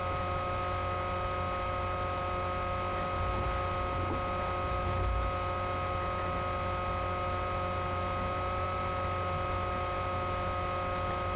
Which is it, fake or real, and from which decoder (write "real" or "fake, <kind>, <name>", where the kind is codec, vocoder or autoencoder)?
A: real